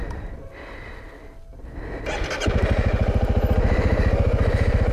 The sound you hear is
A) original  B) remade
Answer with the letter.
A